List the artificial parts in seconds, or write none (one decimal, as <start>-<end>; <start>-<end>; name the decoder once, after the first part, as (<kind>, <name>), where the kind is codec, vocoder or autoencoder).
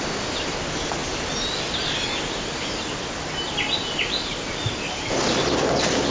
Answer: none